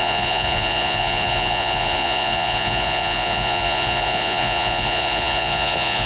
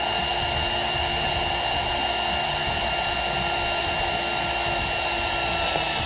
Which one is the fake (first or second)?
first